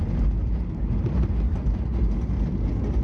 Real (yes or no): yes